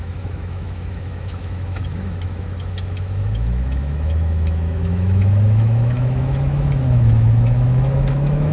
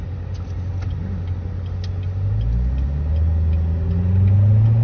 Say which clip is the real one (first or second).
second